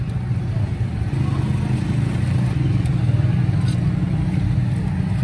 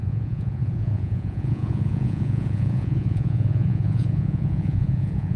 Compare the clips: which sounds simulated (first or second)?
second